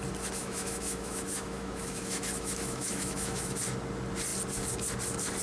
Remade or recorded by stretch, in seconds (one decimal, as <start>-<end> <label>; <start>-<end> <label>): 0.0-0.4 recorded; 0.4-3.6 remade; 3.6-5.4 recorded